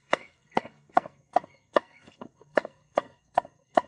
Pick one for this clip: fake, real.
fake